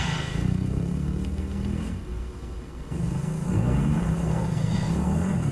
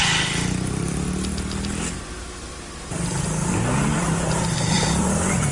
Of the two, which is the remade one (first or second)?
first